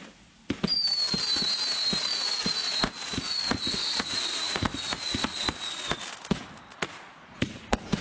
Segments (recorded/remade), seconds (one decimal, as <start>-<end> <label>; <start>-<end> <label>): 0.0-2.0 recorded; 2.0-6.0 remade; 6.0-6.7 recorded; 6.7-8.0 remade